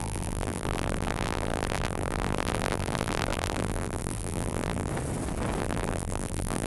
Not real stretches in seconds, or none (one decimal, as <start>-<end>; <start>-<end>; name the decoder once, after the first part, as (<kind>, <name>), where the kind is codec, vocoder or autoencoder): 0.0-4.9 (vocoder, BigVGAN v2); 5.6-6.7